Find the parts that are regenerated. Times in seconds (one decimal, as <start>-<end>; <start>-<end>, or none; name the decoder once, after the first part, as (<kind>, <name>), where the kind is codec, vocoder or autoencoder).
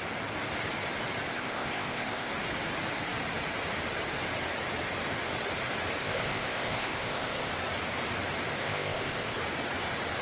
1.3-2.3 (codec, ZipCodec); 6.0-7.5; 8.6-9.4